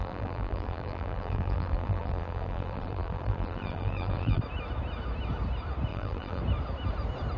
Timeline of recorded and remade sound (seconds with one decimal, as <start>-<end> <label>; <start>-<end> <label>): 0.0-4.4 remade; 4.4-5.9 recorded; 5.9-6.4 remade; 6.4-7.4 recorded